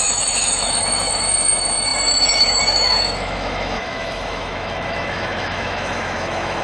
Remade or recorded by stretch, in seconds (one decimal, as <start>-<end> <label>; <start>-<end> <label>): 0.0-6.6 remade